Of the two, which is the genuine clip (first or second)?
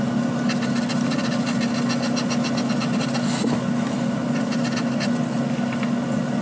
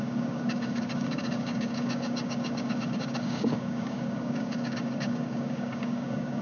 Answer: first